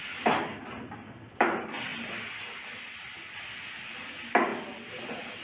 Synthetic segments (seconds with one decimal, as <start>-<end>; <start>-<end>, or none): none